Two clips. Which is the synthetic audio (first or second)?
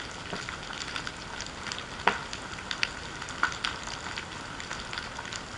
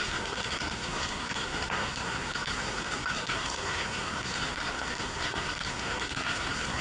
second